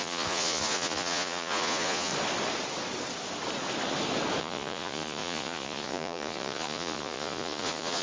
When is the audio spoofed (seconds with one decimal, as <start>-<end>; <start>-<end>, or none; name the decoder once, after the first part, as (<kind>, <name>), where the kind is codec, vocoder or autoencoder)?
0.0-2.1 (vocoder, Vocos); 4.4-8.0